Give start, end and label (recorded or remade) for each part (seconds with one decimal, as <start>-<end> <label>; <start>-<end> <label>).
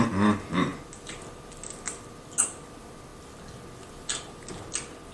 0.0-5.1 recorded